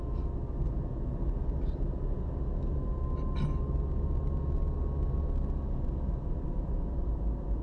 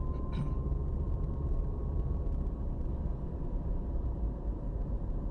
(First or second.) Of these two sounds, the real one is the first